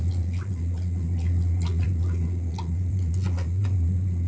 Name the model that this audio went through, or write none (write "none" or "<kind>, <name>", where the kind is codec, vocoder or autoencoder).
vocoder, Vocos